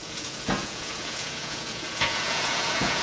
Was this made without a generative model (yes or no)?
no